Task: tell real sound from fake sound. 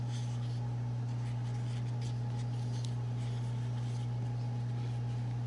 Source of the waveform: real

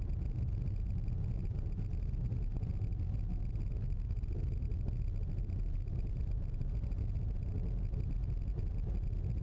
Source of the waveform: real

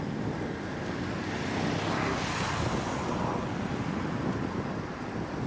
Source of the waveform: real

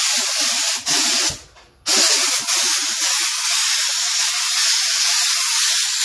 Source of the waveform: real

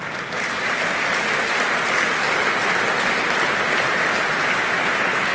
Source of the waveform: fake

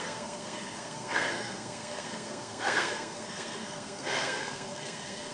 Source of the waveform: fake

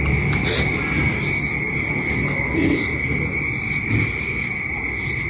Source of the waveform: real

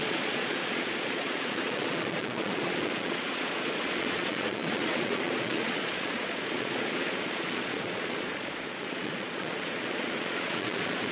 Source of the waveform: fake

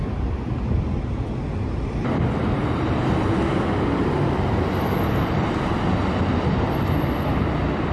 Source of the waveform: real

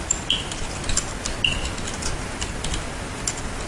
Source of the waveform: real